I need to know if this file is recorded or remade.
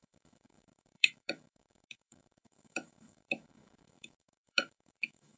remade